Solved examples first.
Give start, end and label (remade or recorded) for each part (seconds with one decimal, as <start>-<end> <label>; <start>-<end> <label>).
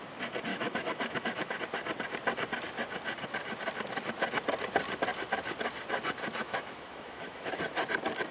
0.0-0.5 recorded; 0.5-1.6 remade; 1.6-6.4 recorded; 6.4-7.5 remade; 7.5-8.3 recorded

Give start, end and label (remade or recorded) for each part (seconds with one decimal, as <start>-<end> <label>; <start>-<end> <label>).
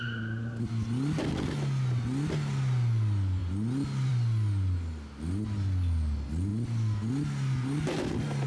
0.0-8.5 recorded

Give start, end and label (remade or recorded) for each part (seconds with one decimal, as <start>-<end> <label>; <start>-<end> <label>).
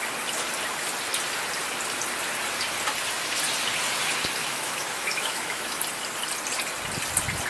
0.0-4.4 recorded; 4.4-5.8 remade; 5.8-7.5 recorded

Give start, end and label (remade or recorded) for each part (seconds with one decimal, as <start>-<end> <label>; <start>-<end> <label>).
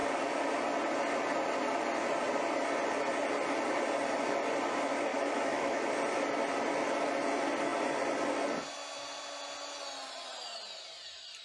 0.0-5.1 recorded; 5.1-5.9 remade; 5.9-11.4 recorded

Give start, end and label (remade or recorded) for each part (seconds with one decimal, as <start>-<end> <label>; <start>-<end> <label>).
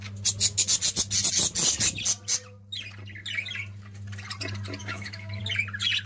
0.0-4.8 recorded; 4.8-5.4 remade; 5.4-6.1 recorded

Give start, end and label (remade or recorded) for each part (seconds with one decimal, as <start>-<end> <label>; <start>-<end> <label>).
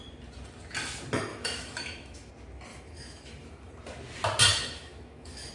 0.0-1.3 recorded; 1.3-2.3 remade; 2.3-2.7 recorded; 2.7-3.7 remade; 3.7-4.5 recorded; 4.5-5.5 remade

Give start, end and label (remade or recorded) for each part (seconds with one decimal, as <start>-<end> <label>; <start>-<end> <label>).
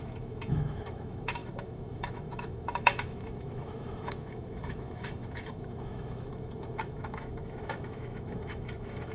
0.0-9.1 remade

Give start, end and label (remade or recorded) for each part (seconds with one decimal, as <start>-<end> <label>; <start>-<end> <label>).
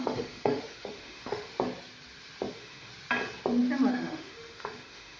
0.0-1.5 remade; 1.5-2.5 recorded; 2.5-2.9 remade; 2.9-3.9 recorded; 3.9-5.2 remade